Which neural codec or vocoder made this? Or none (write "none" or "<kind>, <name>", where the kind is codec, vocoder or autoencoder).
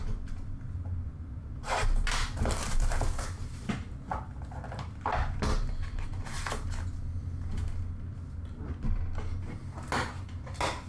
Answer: none